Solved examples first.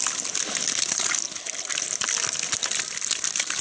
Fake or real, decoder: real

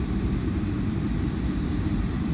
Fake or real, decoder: fake, vocoder, BigVGAN v2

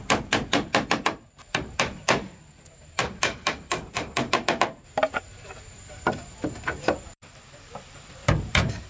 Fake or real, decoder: fake, vocoder, BigVGAN v2